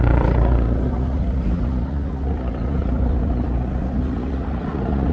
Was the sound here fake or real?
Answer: fake